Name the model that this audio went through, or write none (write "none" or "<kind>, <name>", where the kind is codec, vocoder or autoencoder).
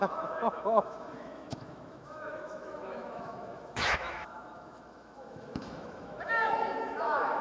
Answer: autoencoder, DAC-VAE